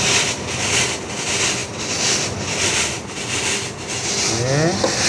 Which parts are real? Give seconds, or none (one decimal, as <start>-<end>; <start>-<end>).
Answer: 0.0-5.1